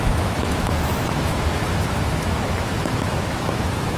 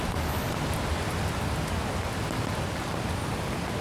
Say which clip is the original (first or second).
second